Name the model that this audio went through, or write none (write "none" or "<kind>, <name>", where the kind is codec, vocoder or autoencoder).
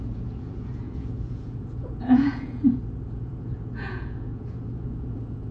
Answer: vocoder, Vocos